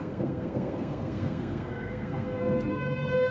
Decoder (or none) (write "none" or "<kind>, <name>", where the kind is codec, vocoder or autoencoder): codec, SNAC